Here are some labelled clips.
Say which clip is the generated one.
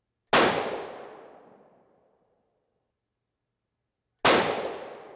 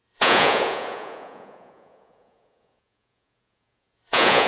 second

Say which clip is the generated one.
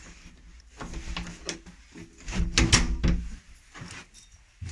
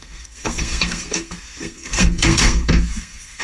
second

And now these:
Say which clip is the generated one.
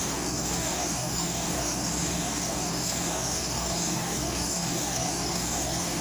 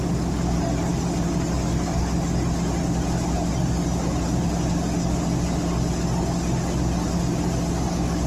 first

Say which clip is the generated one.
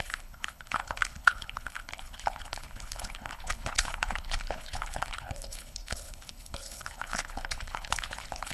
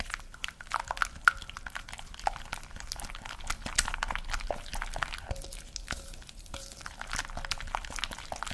first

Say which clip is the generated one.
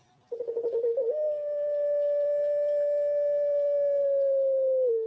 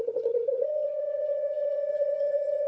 second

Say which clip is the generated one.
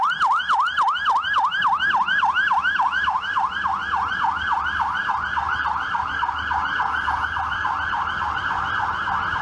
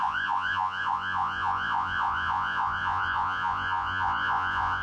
second